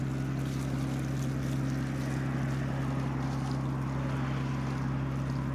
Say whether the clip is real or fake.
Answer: real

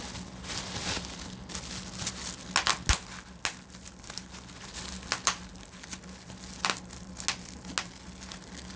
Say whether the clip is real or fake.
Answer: real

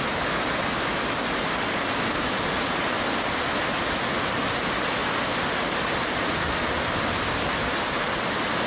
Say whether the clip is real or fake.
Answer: real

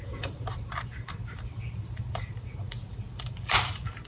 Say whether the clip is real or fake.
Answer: fake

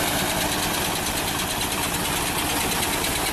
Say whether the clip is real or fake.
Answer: real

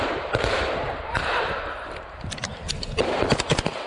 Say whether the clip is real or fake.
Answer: fake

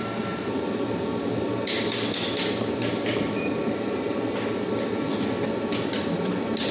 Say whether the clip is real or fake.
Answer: real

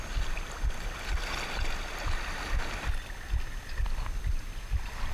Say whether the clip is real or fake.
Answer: real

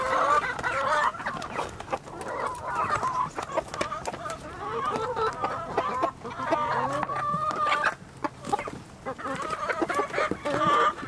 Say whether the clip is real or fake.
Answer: real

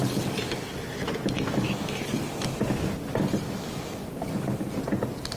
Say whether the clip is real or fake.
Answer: real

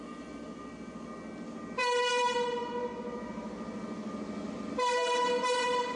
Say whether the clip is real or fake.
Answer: real